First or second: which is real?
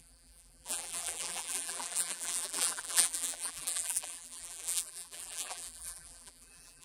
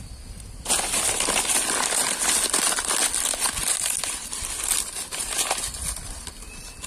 second